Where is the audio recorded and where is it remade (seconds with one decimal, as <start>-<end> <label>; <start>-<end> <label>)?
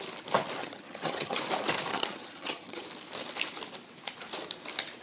0.0-0.6 recorded; 0.6-1.4 remade; 1.4-1.9 recorded; 1.9-2.8 remade; 2.8-5.0 recorded